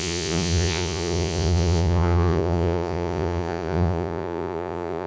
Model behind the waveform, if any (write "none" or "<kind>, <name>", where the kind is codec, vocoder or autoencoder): vocoder, Vocos